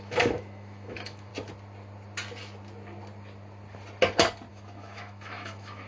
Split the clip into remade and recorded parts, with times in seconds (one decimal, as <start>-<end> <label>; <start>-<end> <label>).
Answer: 0.0-1.3 remade; 1.3-4.5 recorded; 4.5-5.9 remade

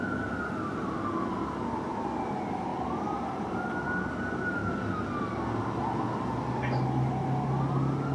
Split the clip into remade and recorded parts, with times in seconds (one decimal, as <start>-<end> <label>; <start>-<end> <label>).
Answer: 0.0-8.1 recorded